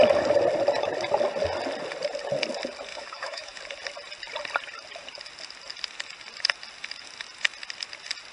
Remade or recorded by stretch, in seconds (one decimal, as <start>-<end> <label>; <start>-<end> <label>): 0.0-2.9 recorded; 2.9-3.6 remade; 3.6-8.3 recorded